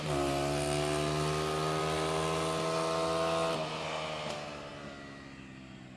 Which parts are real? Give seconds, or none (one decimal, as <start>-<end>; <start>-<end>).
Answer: 0.0-6.0